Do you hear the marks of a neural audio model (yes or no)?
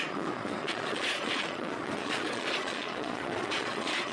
yes